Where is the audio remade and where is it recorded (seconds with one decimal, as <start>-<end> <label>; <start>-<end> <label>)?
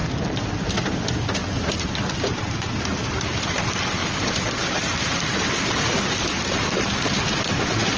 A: 0.0-4.0 recorded; 4.0-6.0 remade; 6.0-8.0 recorded